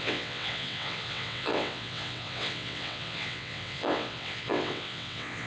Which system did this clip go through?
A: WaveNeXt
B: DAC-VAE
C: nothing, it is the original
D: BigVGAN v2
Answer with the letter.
A